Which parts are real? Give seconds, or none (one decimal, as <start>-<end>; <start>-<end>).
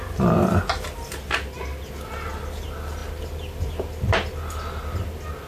0.0-5.5